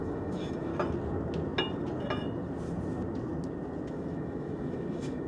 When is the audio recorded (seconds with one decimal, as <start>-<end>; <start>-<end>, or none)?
0.7-3.9